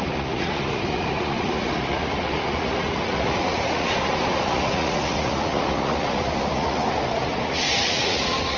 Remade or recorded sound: remade